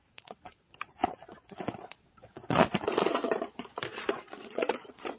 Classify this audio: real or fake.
fake